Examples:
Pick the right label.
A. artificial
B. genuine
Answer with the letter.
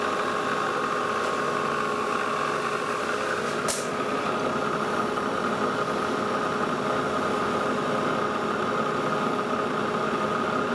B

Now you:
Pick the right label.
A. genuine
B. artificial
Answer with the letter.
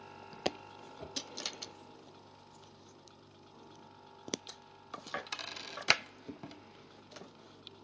A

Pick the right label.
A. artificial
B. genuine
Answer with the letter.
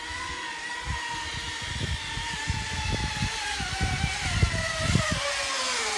B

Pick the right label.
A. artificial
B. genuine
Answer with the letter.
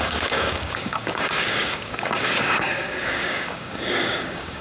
A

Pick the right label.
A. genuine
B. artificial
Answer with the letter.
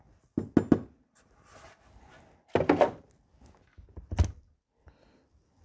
A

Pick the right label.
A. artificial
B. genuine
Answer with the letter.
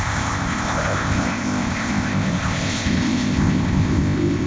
A